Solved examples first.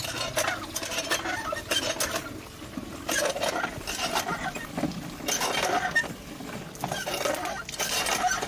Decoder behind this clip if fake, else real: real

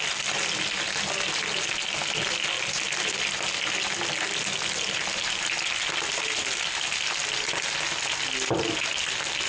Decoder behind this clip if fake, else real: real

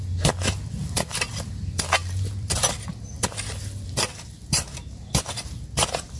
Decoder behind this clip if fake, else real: real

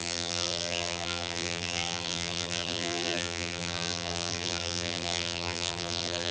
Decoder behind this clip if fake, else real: fake, vocoder, BigVGAN v2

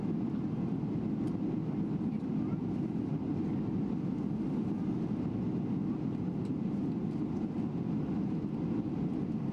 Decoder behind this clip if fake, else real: real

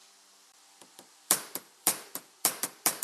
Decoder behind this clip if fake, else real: fake, vocoder, BigVGAN v2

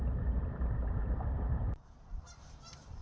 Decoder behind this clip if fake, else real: fake, vocoder, BigVGAN v2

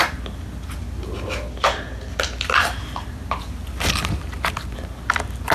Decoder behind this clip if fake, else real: real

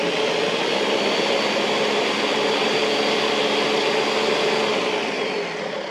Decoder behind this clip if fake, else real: real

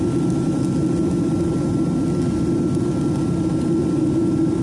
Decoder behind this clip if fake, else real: real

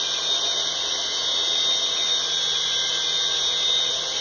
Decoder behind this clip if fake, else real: real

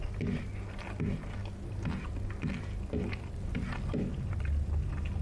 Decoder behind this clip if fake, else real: real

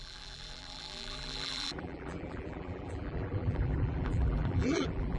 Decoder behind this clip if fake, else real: fake, vocoder, BigVGAN v2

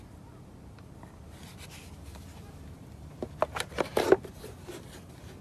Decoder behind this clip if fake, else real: real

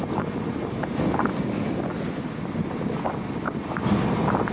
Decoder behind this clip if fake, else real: real